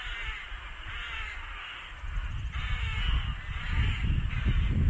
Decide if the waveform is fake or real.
real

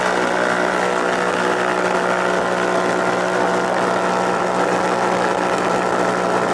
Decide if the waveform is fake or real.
real